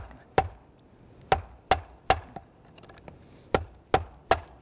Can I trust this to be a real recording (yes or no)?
yes